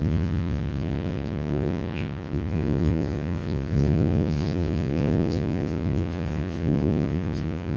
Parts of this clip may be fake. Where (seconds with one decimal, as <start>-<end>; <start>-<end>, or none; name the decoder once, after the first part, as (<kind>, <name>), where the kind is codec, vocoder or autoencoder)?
0.0-7.8 (vocoder, Vocos)

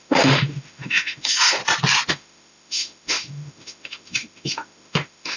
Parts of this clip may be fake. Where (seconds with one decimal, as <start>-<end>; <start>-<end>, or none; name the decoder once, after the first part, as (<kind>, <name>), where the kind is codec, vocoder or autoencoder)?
0.0-1.6 (autoencoder, DAC-VAE); 2.1-5.4